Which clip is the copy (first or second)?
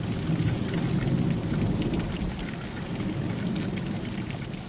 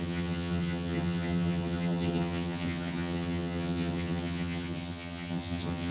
second